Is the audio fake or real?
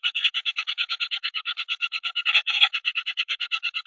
fake